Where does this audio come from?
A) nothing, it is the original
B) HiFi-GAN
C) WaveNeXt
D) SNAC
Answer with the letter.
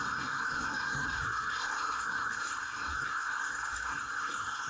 D